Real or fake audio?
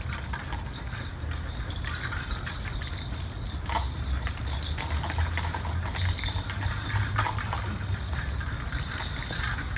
real